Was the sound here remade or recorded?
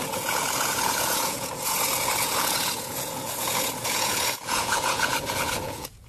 remade